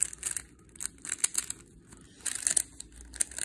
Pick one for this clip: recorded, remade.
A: recorded